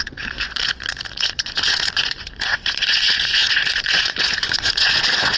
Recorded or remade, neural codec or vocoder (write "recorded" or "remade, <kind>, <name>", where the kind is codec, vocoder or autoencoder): remade, vocoder, Vocos